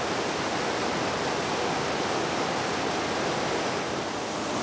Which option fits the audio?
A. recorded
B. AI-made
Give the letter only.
A